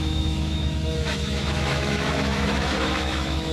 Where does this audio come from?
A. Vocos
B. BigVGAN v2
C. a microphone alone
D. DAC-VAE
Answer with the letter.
D